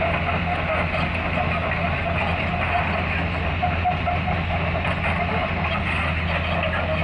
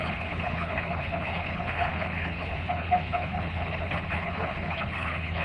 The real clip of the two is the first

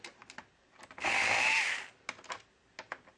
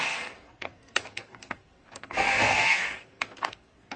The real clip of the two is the first